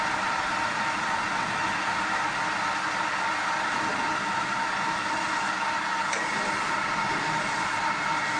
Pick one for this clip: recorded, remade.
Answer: recorded